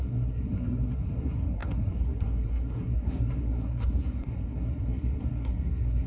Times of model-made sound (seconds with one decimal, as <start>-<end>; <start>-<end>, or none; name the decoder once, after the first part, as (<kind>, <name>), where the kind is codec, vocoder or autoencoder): 0.0-6.1 (codec, SNAC)

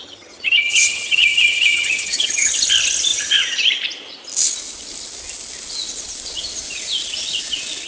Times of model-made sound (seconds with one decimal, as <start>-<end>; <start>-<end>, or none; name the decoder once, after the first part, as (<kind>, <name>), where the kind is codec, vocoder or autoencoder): 0.0-2.5 (vocoder, HiFi-GAN)

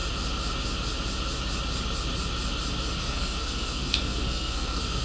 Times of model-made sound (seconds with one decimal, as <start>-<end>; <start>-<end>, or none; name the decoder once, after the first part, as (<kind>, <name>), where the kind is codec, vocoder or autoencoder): 3.0-5.0 (codec, SNAC)

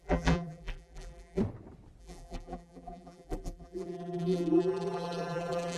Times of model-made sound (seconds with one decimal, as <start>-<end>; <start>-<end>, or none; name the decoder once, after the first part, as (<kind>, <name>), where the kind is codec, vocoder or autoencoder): 0.0-1.4 (vocoder, BigVGAN v2); 2.0-5.8